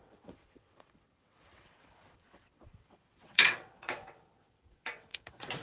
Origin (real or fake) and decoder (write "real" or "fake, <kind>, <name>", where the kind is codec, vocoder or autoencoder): fake, vocoder, WaveNeXt